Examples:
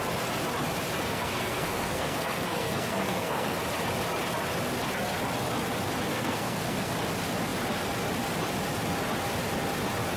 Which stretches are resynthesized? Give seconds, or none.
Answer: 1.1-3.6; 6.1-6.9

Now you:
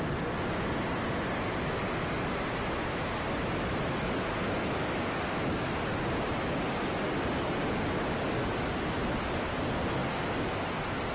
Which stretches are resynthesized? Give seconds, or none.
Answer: none

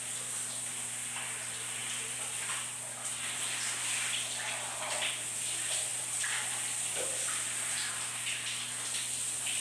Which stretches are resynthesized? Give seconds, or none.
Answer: none

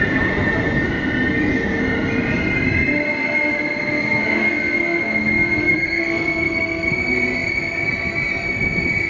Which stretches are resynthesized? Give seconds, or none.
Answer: 5.7-6.9

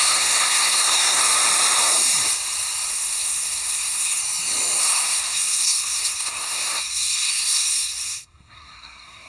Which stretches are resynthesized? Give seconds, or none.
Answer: 0.0-1.2; 2.9-4.2; 4.8-9.3